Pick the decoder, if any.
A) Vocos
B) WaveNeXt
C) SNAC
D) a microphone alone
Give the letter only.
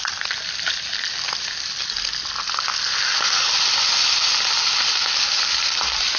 D